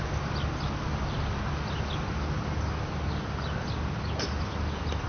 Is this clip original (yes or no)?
yes